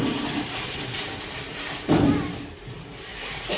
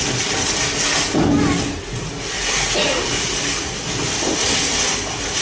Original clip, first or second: second